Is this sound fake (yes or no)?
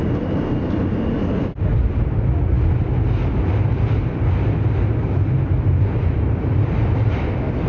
no